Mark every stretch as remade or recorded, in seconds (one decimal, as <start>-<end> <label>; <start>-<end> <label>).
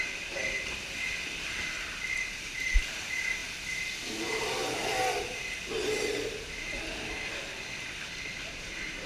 0.0-0.4 remade; 0.4-2.8 recorded; 2.8-3.4 remade; 3.4-8.5 recorded; 8.5-9.1 remade